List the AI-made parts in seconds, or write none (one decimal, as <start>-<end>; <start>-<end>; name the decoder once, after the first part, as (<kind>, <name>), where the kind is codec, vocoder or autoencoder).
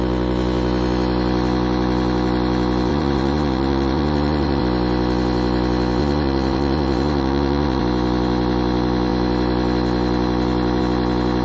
2.9-4.6 (vocoder, Vocos); 6.0-7.8